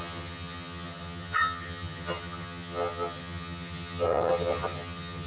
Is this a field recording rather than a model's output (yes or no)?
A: no